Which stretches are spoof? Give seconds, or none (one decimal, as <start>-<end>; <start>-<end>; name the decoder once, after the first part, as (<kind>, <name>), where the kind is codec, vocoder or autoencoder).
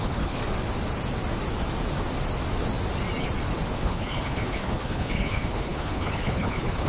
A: 0.0-0.4 (codec, HILCodec); 3.8-6.9